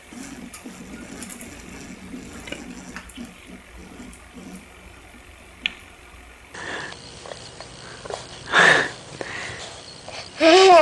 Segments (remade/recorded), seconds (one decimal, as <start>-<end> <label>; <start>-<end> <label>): 0.0-10.8 recorded